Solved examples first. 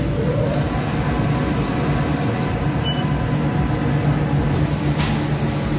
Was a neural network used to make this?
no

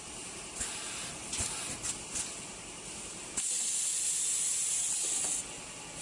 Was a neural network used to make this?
no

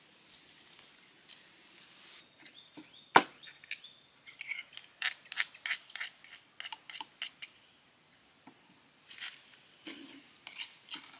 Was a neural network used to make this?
no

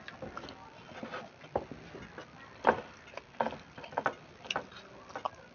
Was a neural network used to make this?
no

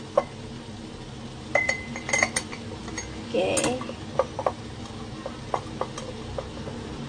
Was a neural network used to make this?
no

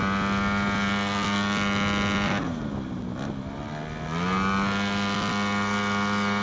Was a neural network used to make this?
no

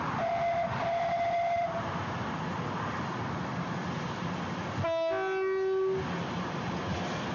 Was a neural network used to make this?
no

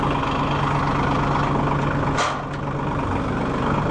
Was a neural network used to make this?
no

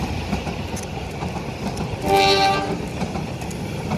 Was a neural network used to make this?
no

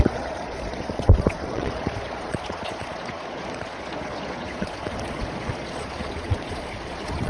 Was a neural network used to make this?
yes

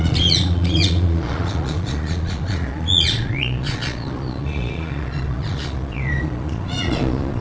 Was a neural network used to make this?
yes